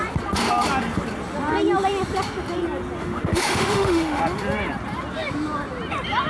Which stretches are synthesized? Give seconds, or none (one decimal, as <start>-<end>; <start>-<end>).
3.0-4.2